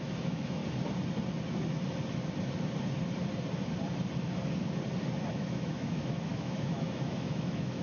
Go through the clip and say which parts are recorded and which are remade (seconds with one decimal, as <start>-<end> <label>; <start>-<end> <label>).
0.0-0.6 remade; 0.6-5.3 recorded; 5.3-7.8 remade